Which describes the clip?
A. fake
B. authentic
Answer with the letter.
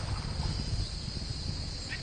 B